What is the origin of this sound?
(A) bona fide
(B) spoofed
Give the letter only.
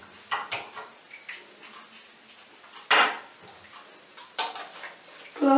A